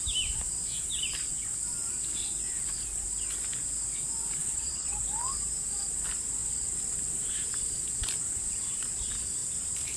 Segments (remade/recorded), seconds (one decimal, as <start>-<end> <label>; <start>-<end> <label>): 0.0-4.4 recorded; 4.4-4.9 remade; 4.9-10.0 recorded

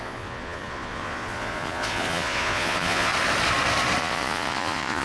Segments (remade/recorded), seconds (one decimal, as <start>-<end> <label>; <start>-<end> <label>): 0.0-3.1 remade; 3.1-4.0 recorded; 4.0-5.0 remade

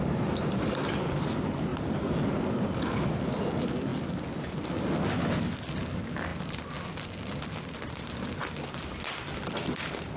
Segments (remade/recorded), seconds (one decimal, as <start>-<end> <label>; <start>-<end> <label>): 0.0-10.2 recorded

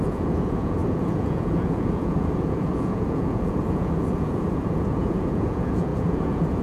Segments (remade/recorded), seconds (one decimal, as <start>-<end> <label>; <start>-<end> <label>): 0.0-6.6 remade

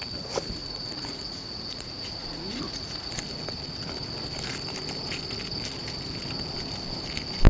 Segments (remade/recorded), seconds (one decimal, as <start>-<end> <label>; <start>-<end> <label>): 0.0-0.6 recorded; 0.6-3.1 remade; 3.1-7.5 recorded

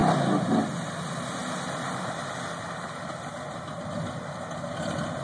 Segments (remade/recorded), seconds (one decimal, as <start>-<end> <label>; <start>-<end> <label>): 0.0-5.2 recorded

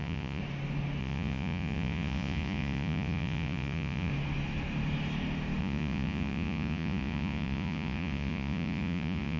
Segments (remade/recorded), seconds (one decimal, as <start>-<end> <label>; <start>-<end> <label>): 0.0-0.4 remade; 0.4-1.0 recorded; 1.0-4.1 remade; 4.1-5.6 recorded; 5.6-9.4 remade